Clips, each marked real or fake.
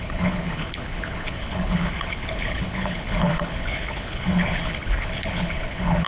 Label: fake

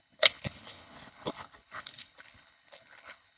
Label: fake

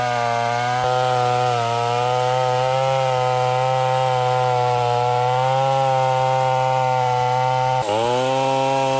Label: real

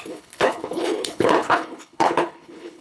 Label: fake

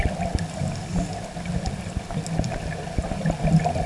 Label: real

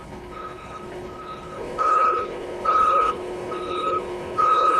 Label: fake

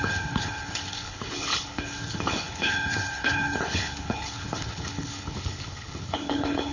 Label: fake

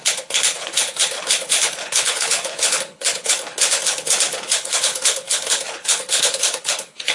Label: fake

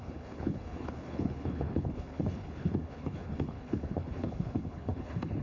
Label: fake